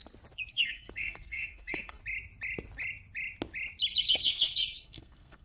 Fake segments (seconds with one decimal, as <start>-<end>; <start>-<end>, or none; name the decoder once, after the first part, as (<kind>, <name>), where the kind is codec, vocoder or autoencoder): 0.5-2.0 (codec, SNAC); 4.0-5.4